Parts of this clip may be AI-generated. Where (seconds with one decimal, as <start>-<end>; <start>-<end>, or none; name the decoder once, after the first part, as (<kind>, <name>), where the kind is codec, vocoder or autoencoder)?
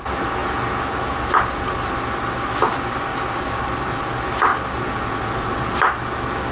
none